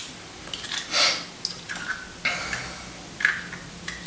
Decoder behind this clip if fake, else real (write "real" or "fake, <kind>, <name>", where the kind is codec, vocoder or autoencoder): real